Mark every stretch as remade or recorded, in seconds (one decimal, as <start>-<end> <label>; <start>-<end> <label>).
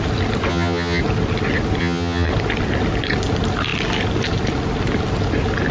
0.0-0.5 recorded; 0.5-1.0 remade; 1.0-1.8 recorded; 1.8-2.3 remade; 2.3-5.7 recorded